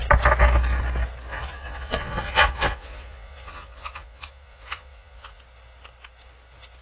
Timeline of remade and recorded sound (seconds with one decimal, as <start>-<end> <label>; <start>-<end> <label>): 0.0-1.3 recorded; 1.3-5.4 remade; 5.4-6.8 recorded